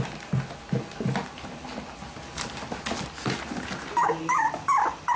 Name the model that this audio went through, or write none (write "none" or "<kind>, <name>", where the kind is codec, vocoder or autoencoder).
none